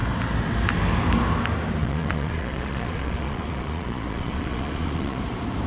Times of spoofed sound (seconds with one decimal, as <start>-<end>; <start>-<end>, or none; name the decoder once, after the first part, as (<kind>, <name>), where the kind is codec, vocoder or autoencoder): 1.8-5.2 (vocoder, Vocos)